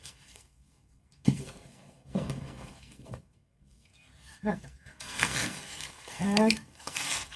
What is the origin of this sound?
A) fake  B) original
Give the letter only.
A